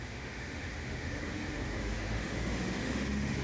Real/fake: fake